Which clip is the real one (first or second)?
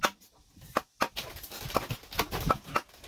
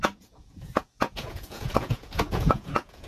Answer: first